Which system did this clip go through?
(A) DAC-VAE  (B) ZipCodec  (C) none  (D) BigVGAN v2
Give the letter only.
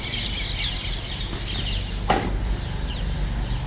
C